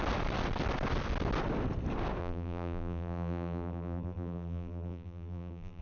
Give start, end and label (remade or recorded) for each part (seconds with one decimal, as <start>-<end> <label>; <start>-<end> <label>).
0.0-2.2 recorded; 2.2-5.8 remade

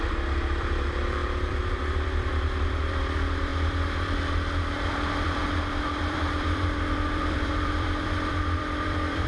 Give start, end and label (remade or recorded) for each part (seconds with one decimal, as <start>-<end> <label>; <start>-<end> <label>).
0.0-3.5 remade; 3.5-4.7 recorded; 4.7-9.3 remade

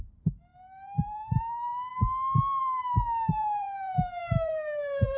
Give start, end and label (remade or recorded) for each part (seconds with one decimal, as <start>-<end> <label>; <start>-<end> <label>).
0.0-1.9 remade; 1.9-2.6 recorded; 2.6-5.2 remade